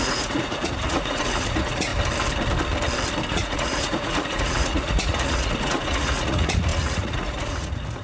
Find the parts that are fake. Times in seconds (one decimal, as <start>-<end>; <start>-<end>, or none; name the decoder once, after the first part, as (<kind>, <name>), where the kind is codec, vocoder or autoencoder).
0.0-1.9 (vocoder, Vocos); 3.3-8.0